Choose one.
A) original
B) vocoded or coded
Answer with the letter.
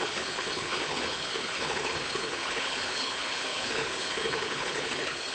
B